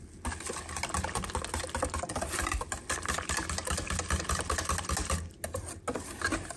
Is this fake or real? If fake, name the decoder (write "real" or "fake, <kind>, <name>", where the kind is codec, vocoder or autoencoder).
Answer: real